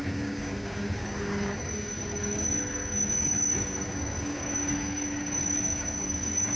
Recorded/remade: remade